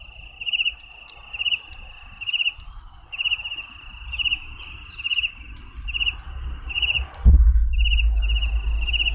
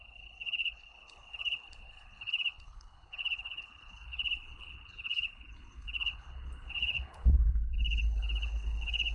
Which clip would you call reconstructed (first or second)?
second